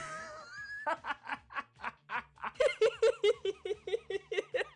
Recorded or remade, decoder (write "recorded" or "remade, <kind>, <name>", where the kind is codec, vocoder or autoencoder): recorded